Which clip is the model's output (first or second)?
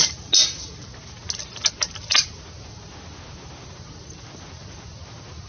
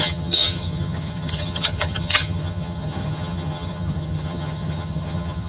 second